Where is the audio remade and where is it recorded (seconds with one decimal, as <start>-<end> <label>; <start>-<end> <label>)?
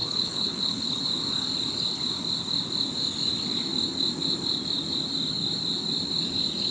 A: 0.0-1.0 remade; 1.0-6.7 recorded